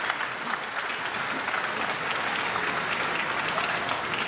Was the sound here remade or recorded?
recorded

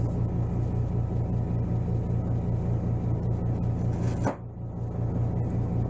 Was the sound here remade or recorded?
recorded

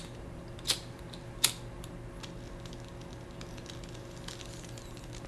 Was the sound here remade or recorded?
recorded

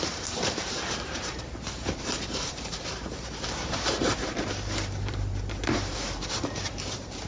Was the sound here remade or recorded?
remade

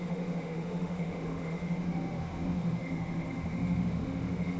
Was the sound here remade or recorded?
remade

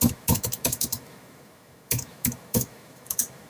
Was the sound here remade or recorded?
remade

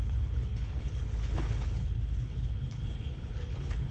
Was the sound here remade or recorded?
remade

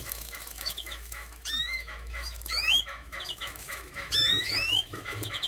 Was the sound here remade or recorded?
remade